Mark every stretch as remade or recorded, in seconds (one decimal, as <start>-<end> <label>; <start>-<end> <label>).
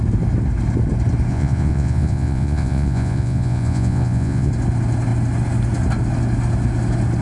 0.0-1.3 recorded; 1.3-4.5 remade; 4.5-7.2 recorded